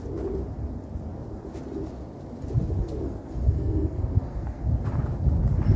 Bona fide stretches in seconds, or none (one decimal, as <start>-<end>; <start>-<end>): 0.0-2.8; 4.6-5.8